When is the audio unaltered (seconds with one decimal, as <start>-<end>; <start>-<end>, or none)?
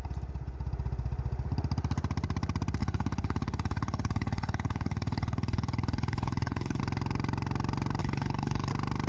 0.0-2.8; 6.8-8.0; 8.7-9.1